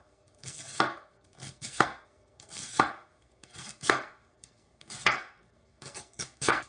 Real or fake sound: fake